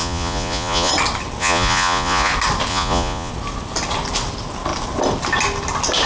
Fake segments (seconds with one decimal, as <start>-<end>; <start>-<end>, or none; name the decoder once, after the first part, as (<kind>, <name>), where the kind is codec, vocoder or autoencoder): 0.0-0.9 (vocoder, Vocos); 1.4-2.3; 2.7-3.3

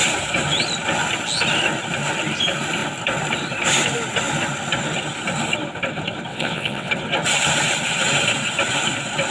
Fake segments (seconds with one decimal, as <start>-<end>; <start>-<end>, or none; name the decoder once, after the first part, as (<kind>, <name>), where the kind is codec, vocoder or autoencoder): 6.3-6.9 (vocoder, WaveNeXt)

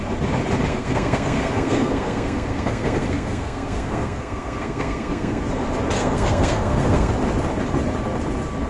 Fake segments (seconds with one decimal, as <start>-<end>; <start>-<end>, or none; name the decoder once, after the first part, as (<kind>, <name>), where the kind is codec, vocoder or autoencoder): 0.7-5.4 (codec, SNAC); 6.0-7.1

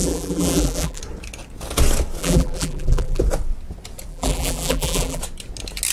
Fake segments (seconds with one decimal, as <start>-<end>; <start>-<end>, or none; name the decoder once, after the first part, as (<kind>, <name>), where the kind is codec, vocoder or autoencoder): 0.0-1.0 (vocoder, BigVGAN v2); 2.2-3.2; 4.1-5.2

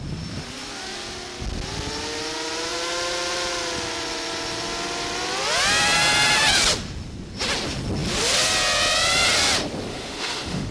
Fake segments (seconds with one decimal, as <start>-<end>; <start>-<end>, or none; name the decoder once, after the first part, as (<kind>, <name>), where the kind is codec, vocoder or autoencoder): 9.9-10.7 (autoencoder, DAC-VAE)

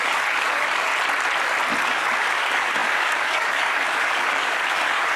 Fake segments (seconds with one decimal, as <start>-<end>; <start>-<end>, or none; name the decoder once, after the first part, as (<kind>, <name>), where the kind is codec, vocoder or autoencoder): 0.0-0.9 (codec, DAC); 1.8-5.2

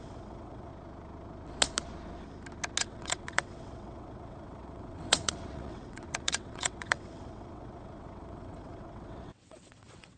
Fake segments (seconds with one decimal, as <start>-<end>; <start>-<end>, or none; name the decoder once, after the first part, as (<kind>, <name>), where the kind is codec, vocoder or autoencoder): 0.0-0.7 (vocoder, WaveNeXt); 2.8-10.2